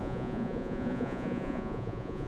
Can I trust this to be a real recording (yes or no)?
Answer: no